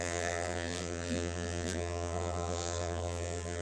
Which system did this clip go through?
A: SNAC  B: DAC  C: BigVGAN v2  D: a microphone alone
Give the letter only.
C